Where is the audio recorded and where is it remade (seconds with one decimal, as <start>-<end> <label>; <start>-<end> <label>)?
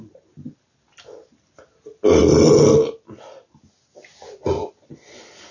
0.0-5.5 recorded